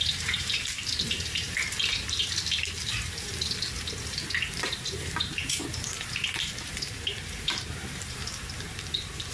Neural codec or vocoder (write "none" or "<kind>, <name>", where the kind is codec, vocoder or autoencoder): vocoder, BigVGAN v2